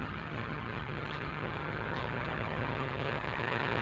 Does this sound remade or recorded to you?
remade